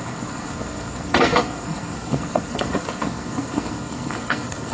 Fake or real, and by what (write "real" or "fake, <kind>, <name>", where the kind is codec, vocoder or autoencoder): fake, codec, SNAC